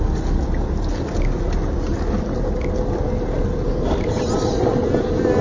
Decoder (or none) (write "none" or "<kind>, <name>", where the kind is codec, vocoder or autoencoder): none